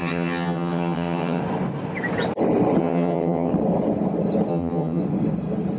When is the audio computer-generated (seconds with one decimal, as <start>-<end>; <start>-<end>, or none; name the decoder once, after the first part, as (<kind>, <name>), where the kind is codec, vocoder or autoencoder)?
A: 0.0-1.4 (vocoder, HiFi-GAN); 2.8-3.5; 4.5-5.0